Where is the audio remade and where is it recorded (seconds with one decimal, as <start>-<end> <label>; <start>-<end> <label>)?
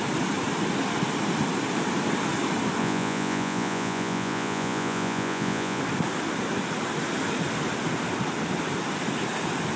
0.0-2.8 recorded; 2.8-5.8 remade; 5.8-9.8 recorded